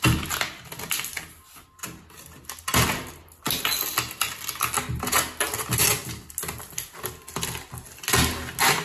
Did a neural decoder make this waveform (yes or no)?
no